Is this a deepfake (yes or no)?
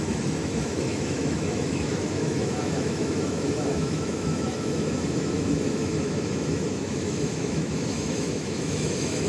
yes